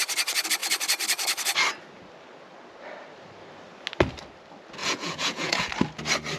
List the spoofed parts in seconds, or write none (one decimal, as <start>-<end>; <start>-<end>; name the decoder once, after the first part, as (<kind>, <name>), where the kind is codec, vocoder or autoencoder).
4.8-5.7 (vocoder, Vocos)